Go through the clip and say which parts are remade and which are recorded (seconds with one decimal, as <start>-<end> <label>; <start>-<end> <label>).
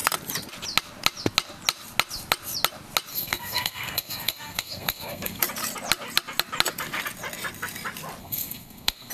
0.0-3.1 recorded; 3.1-5.4 remade; 5.4-8.2 recorded; 8.2-9.1 remade